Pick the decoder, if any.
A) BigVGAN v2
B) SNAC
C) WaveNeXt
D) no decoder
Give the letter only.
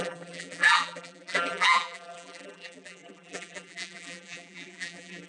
A